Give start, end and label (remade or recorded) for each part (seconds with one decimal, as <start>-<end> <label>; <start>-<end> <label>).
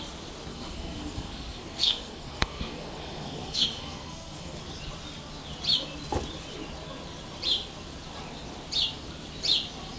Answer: 0.0-0.5 recorded; 0.5-4.6 remade; 4.6-10.0 recorded